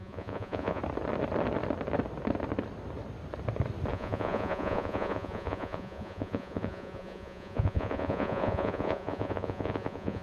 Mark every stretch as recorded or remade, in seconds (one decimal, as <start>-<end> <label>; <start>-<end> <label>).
0.0-0.8 remade; 0.8-3.9 recorded; 3.9-10.2 remade